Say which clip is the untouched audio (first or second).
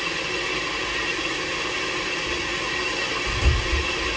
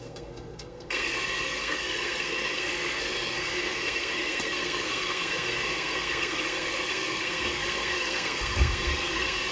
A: first